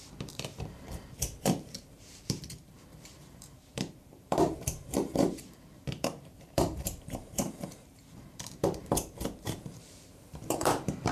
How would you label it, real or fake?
fake